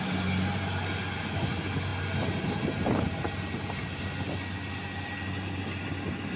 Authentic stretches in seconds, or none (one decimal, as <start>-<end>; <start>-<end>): 0.0-6.4